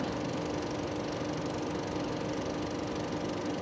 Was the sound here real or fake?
real